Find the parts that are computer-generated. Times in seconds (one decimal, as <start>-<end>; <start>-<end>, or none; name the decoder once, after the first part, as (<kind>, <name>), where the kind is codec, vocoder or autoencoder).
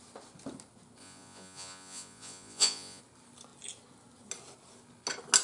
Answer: 1.0-3.0 (vocoder, Vocos)